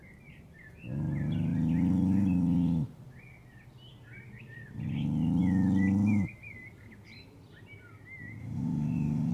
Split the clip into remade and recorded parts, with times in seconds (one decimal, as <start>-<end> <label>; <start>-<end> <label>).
0.0-8.4 recorded; 8.4-9.3 remade